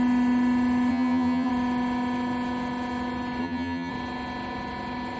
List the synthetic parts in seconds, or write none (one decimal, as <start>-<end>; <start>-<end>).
0.9-1.5; 3.4-3.9